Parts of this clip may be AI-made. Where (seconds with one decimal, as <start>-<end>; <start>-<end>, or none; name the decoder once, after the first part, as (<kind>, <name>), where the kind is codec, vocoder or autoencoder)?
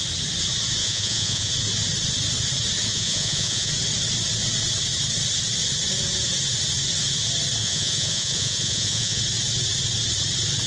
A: 0.8-1.5 (vocoder, Vocos); 2.9-3.7; 7.6-9.2